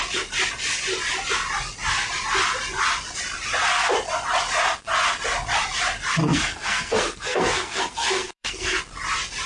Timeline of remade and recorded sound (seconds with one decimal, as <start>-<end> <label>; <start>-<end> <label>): 0.0-6.2 recorded; 6.2-8.8 remade; 8.8-9.5 recorded